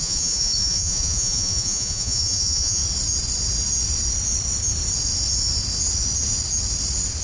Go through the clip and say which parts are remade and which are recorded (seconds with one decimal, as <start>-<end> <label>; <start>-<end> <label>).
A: 0.0-2.8 remade; 2.8-7.2 recorded